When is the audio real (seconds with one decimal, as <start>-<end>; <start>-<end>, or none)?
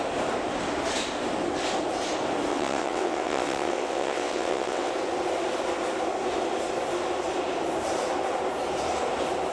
0.0-2.5; 4.9-9.5